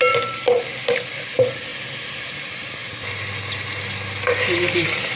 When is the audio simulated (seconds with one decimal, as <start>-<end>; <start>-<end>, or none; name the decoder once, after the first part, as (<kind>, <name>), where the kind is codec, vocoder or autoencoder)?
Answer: 0.0-2.8 (vocoder, BigVGAN v2)